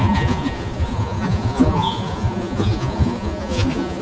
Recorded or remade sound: remade